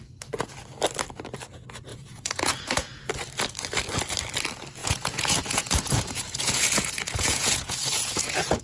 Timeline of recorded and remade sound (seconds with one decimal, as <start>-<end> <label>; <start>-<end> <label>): 0.0-1.9 recorded; 1.9-3.1 remade; 3.1-4.8 recorded; 4.8-8.6 remade